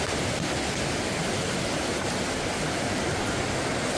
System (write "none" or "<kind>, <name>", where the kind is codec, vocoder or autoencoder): none